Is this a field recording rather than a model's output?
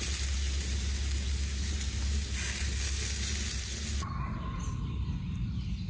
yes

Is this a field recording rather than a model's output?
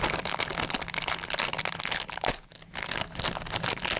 yes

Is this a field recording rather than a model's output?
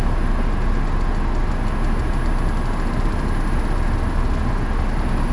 yes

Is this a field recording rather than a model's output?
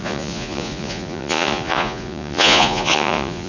no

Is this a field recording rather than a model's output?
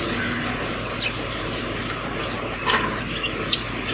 yes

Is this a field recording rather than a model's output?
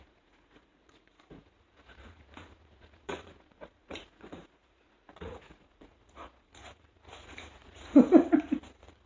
no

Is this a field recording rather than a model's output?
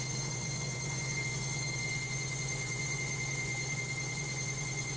no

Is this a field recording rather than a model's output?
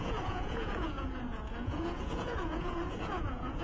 no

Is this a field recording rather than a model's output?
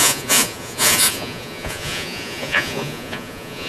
no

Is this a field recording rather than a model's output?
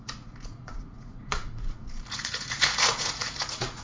no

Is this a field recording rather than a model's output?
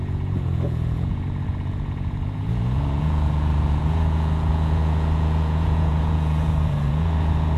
no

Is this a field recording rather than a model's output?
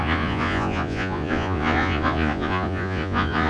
no